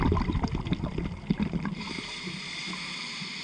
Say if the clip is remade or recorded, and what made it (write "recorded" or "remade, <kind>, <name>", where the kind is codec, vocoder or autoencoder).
recorded